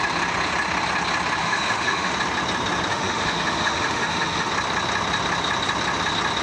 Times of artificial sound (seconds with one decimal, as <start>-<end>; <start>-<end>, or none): 1.4-2.1; 2.9-4.5